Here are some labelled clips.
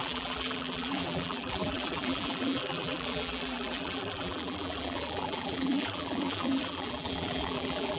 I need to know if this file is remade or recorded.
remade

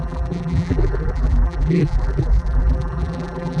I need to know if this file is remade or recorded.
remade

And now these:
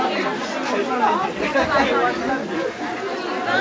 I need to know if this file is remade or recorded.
recorded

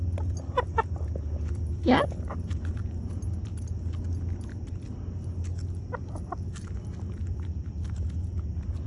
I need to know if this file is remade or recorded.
recorded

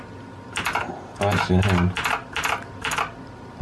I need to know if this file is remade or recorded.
recorded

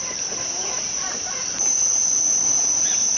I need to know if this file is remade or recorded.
remade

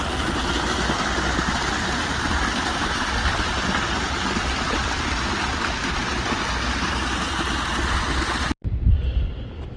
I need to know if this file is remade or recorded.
recorded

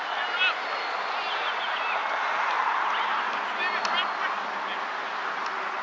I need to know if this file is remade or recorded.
recorded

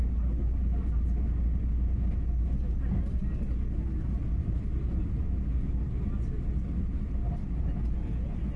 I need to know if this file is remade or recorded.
recorded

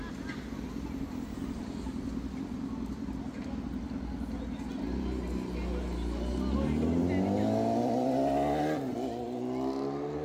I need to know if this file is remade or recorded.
recorded